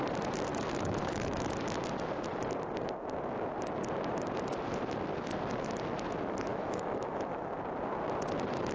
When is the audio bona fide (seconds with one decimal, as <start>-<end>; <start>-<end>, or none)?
0.0-0.5; 1.5-6.5; 7.5-8.7